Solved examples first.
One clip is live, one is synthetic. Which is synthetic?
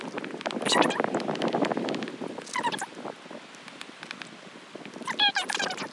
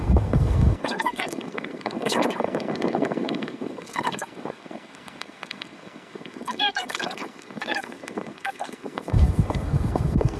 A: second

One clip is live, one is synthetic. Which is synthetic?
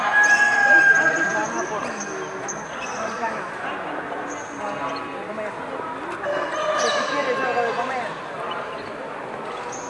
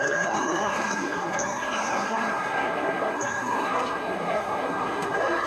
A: second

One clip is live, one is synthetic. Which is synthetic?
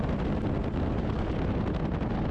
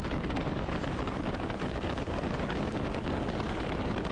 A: second